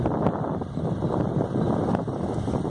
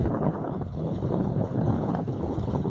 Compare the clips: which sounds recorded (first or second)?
first